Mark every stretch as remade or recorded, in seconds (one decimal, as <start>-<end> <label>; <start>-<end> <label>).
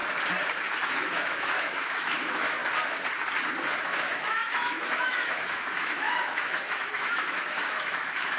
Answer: 0.0-0.9 recorded; 0.9-2.6 remade; 2.6-3.7 recorded; 3.7-8.4 remade